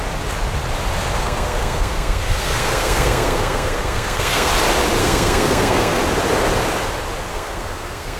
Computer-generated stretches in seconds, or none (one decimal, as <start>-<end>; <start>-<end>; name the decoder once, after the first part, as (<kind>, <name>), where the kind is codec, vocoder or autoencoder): 1.2-4.5 (codec, SNAC); 5.0-6.0; 7.3-8.2